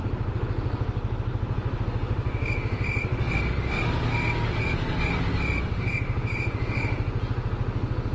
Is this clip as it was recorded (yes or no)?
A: yes